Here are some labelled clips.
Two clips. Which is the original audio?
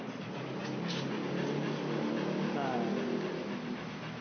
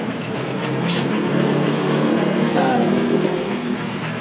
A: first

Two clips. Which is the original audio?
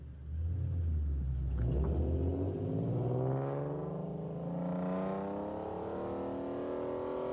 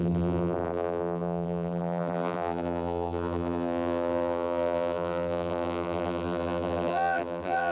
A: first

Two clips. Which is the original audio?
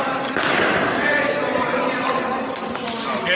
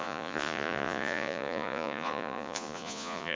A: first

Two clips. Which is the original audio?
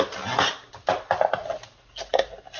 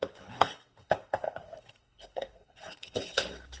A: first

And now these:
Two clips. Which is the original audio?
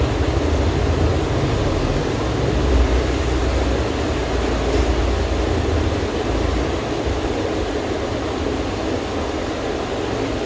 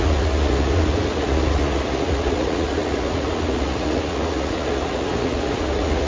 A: first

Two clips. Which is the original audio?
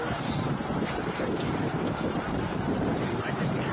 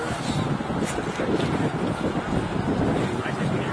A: second